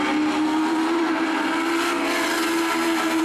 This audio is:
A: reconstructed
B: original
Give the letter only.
B